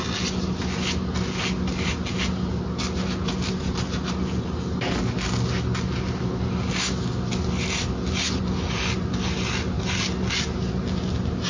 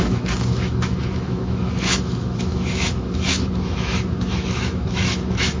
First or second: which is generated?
second